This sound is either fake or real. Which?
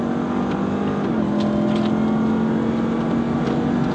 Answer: real